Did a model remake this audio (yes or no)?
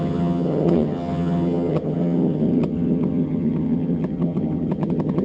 yes